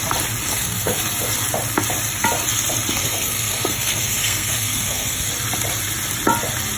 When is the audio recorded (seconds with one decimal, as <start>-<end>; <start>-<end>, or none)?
0.0-0.5; 1.0-3.0; 5.3-6.8